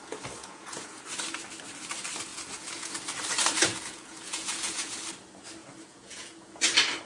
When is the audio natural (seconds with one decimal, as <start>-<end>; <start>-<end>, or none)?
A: 0.0-0.4; 1.0-2.3; 2.9-3.7; 5.0-5.6; 6.6-7.1